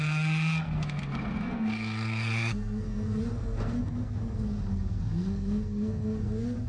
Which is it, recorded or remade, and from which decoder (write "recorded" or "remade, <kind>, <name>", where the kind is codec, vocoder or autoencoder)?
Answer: remade, codec, SNAC